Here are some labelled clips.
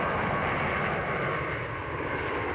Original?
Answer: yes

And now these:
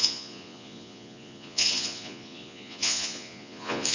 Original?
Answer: no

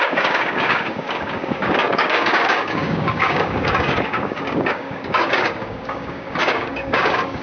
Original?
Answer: no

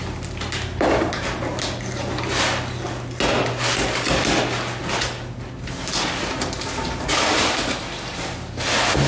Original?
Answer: yes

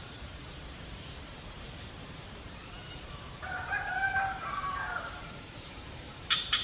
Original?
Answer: no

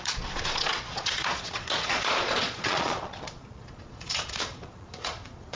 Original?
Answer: no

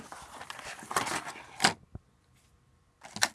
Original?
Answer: yes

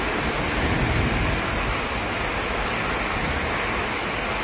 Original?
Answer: yes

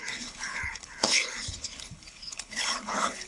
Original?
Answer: no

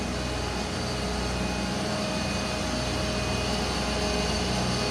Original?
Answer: yes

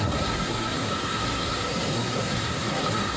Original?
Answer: no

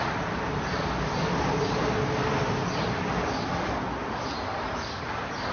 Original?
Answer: yes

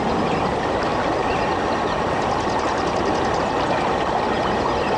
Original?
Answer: yes